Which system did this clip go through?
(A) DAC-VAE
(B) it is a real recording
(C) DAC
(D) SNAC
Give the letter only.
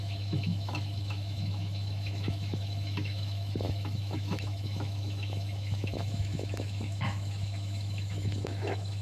A